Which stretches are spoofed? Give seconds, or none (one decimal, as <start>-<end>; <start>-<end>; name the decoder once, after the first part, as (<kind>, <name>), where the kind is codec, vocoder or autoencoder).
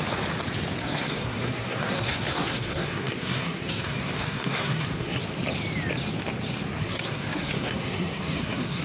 0.8-5.2 (codec, SNAC); 6.8-8.8